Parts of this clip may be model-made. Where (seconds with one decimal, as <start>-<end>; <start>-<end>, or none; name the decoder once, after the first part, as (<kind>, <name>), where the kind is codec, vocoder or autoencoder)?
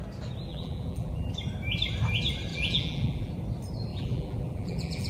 0.5-1.4 (vocoder, BigVGAN v2); 2.5-3.3; 3.9-5.1